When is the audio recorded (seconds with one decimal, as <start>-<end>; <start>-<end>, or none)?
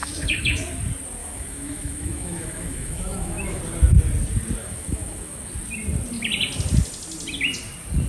0.6-1.2; 3.6-4.6; 5.5-8.1